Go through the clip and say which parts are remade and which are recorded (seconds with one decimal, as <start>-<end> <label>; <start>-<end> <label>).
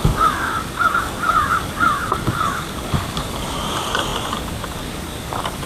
0.0-5.7 remade